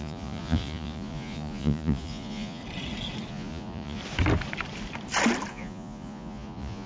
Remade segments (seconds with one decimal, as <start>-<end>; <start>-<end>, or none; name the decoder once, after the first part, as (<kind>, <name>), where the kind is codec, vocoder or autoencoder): 0.0-2.6 (vocoder, Vocos); 3.3-4.0; 5.5-6.9